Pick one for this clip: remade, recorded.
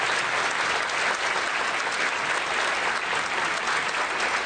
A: recorded